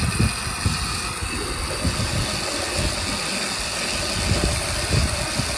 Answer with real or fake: real